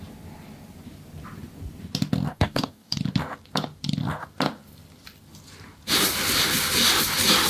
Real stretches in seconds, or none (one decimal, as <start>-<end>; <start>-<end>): 0.0-2.3; 3.0-7.5